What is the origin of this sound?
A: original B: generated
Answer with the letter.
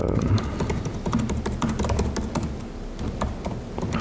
A